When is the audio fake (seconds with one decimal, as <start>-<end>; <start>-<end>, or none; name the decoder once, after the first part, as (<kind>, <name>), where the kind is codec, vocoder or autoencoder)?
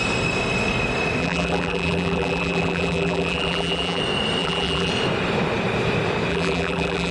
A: 1.2-4.0 (vocoder, BigVGAN v2); 4.4-4.9; 6.3-7.1